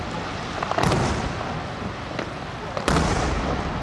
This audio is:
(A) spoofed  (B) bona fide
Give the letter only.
B